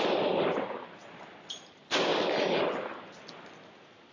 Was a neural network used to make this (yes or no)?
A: no